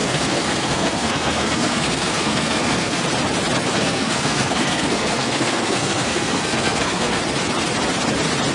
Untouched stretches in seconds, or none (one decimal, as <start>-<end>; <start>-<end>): 3.0-3.7; 7.2-8.5